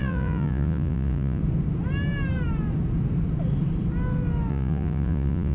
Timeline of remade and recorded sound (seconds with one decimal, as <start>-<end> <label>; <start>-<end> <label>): 0.0-1.4 remade; 1.4-4.5 recorded; 4.5-5.5 remade